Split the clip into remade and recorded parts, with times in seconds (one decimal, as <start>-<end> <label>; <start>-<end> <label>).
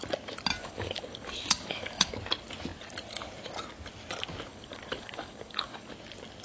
0.0-0.6 recorded; 0.6-2.1 remade; 2.1-4.5 recorded; 4.5-5.9 remade; 5.9-6.4 recorded